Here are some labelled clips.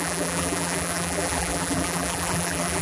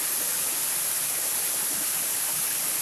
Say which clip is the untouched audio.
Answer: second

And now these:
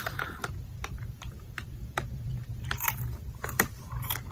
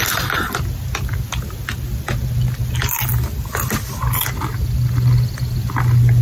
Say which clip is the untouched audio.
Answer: second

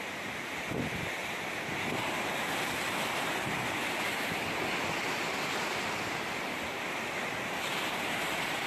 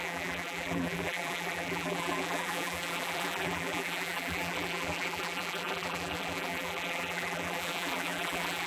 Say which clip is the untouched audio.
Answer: first